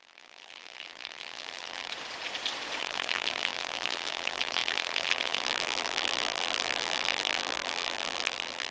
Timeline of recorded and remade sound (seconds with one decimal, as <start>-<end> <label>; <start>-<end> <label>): 0.0-1.9 remade; 1.9-2.8 recorded; 2.8-8.7 remade